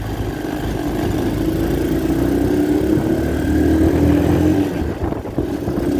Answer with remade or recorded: recorded